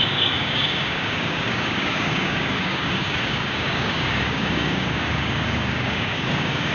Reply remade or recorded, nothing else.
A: remade